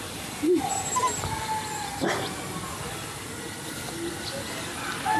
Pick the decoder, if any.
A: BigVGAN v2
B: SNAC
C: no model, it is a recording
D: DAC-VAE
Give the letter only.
C